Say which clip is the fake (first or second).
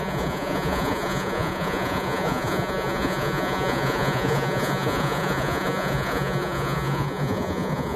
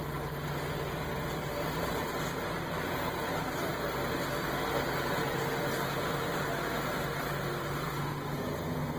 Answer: first